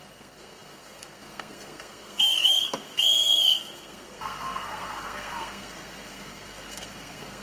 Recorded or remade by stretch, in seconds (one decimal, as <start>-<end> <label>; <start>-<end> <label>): 0.0-7.4 remade